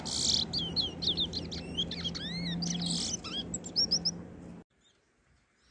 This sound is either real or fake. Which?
real